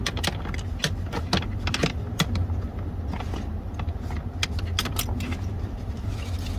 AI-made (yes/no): no